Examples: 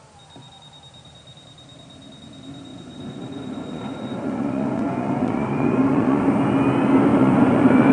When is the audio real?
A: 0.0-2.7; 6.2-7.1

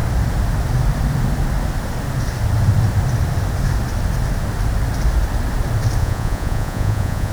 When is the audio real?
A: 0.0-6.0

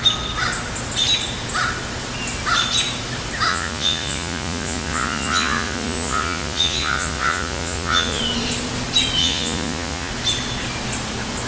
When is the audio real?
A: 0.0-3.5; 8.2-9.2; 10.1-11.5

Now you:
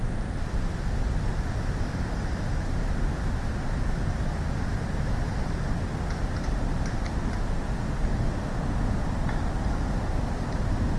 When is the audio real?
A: 0.0-11.0

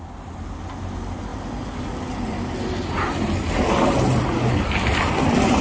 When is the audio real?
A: 0.0-5.6

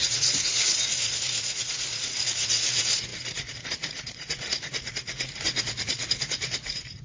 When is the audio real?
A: none

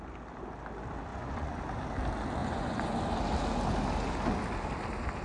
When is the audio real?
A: 0.0-1.1; 1.6-2.4; 3.0-5.2

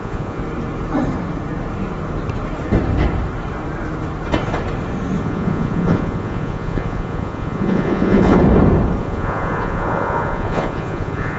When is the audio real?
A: 0.4-5.2; 8.4-9.0